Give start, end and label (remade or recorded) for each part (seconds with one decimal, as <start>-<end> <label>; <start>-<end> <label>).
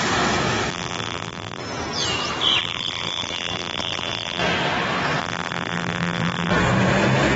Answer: 0.0-0.7 recorded; 0.7-1.6 remade; 1.6-2.6 recorded; 2.6-4.4 remade; 4.4-5.2 recorded; 5.2-6.5 remade; 6.5-7.4 recorded